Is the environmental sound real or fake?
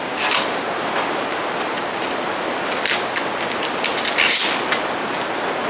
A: real